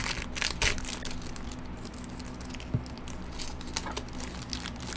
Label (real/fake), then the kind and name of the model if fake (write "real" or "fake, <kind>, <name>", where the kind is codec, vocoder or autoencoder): real